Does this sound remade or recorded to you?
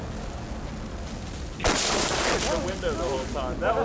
recorded